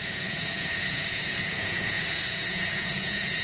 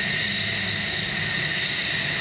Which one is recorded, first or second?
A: second